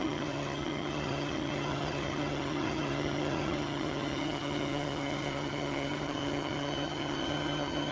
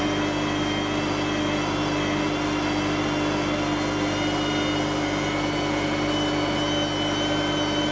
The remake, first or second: first